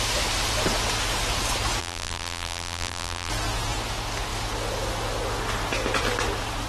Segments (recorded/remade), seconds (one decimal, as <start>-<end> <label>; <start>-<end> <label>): 0.0-1.8 recorded; 1.8-3.3 remade; 3.3-6.7 recorded